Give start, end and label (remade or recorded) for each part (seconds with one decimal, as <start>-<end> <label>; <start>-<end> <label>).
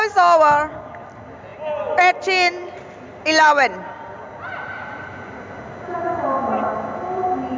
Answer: 0.0-7.6 recorded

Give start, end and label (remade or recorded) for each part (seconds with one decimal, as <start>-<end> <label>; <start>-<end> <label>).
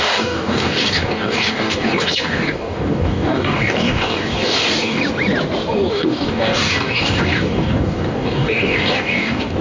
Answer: 0.0-5.0 remade; 5.0-5.9 recorded; 5.9-9.6 remade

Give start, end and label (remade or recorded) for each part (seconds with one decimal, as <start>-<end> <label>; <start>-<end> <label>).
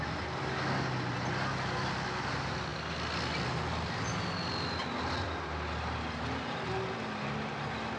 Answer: 0.0-8.0 recorded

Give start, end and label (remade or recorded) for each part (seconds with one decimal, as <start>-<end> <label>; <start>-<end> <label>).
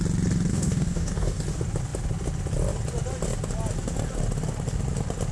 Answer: 0.0-0.5 recorded; 0.5-1.4 remade; 1.4-5.3 recorded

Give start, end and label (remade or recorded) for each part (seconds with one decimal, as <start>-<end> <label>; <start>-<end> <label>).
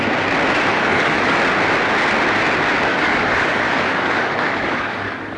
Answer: 0.0-0.7 recorded; 0.7-1.4 remade; 1.4-2.9 recorded; 2.9-5.4 remade